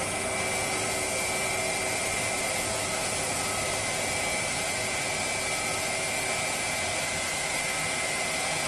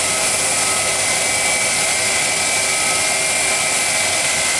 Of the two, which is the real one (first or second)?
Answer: second